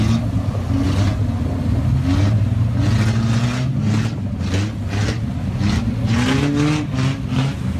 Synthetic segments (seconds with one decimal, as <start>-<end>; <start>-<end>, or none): none